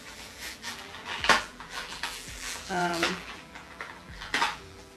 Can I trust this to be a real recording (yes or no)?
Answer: no